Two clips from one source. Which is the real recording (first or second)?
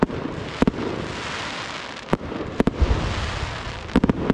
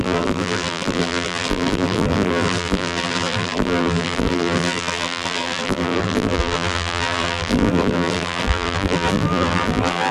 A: first